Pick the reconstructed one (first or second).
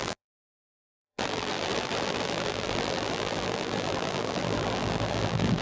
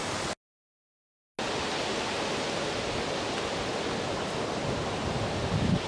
first